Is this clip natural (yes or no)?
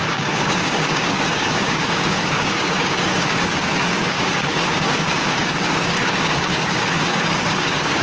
no